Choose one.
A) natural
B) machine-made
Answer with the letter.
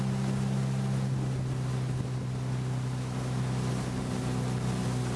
A